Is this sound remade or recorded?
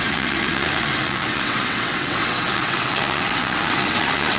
remade